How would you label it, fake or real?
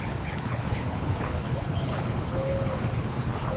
fake